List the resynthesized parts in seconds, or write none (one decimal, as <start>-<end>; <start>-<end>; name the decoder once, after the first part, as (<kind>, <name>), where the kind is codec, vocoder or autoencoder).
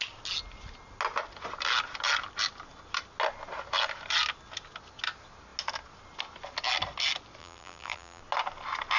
7.4-8.2 (vocoder, BigVGAN v2)